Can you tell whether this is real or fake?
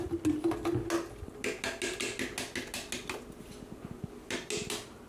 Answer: real